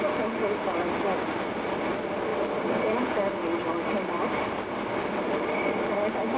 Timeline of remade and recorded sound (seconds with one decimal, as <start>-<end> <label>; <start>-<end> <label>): 0.0-6.4 recorded

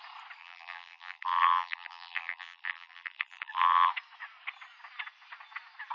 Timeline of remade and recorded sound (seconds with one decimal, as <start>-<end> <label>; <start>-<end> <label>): 0.0-0.4 recorded; 0.4-3.9 remade; 3.9-5.9 recorded

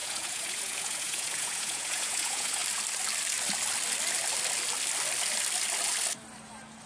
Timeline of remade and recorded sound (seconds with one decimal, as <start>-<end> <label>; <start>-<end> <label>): 0.0-2.6 remade; 2.6-6.9 recorded

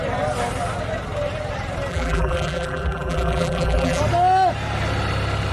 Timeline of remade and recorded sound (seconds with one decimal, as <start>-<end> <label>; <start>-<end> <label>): 0.0-1.9 recorded; 1.9-4.0 remade; 4.0-5.5 recorded

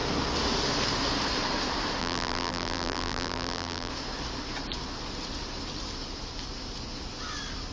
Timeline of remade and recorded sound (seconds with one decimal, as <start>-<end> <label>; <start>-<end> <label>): 0.0-2.0 recorded; 2.0-3.9 remade; 3.9-7.7 recorded

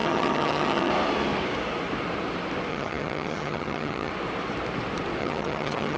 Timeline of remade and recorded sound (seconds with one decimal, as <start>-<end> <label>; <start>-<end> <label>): 0.0-0.9 remade; 0.9-2.7 recorded; 2.7-4.1 remade; 4.1-5.2 recorded; 5.2-6.0 remade

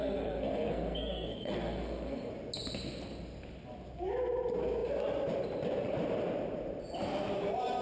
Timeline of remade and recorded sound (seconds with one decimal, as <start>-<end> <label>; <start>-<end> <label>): 0.0-2.3 remade; 2.3-7.8 recorded